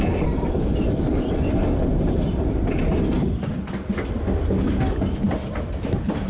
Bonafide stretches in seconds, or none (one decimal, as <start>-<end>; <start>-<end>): none